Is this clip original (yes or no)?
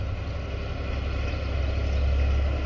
yes